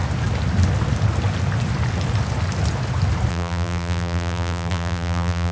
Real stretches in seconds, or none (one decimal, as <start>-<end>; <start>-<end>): 0.0-3.3